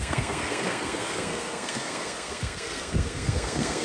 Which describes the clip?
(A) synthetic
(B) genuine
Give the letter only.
A